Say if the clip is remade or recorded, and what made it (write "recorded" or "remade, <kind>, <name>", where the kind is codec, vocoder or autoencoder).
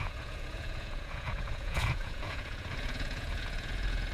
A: remade, vocoder, Vocos